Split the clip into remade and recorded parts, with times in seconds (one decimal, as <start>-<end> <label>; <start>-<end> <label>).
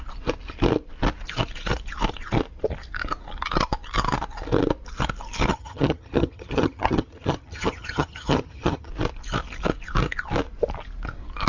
0.0-5.5 recorded; 5.5-8.9 remade; 8.9-11.5 recorded